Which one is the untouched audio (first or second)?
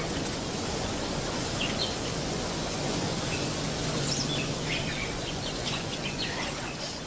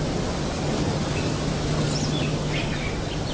second